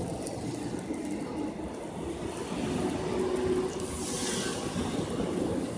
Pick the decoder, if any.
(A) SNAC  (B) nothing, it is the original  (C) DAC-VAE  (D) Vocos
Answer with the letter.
B